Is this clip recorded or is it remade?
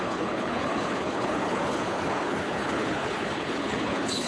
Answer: remade